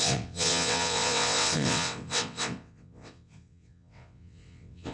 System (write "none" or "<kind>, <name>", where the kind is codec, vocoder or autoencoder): vocoder, WaveNeXt